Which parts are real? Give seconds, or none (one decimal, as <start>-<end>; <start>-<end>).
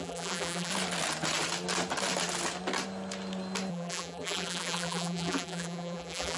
0.7-3.7